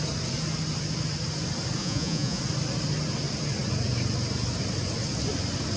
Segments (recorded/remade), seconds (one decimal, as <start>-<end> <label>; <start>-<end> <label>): 0.0-1.8 recorded; 1.8-2.4 remade; 2.4-5.8 recorded